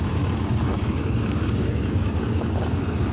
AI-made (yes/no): yes